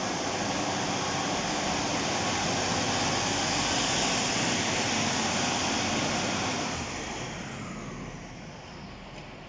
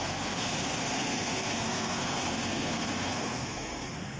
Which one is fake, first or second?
second